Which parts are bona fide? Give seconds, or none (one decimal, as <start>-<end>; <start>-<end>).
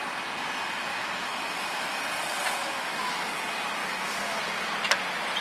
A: 0.0-0.9; 2.0-2.6; 3.3-3.8; 4.4-5.4